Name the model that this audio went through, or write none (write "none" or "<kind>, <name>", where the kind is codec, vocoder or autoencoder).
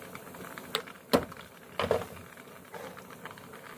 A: none